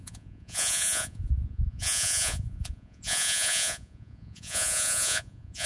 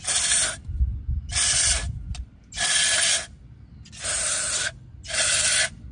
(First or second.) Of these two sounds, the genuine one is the second